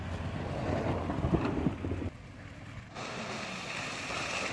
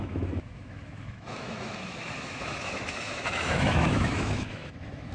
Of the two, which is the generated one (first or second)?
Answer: second